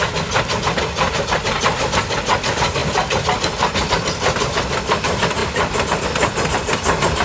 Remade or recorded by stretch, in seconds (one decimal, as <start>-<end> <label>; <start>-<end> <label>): 0.0-2.8 recorded; 2.8-3.9 remade; 3.9-5.4 recorded; 5.4-6.0 remade; 6.0-7.2 recorded